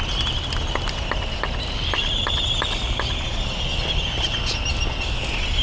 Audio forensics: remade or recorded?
recorded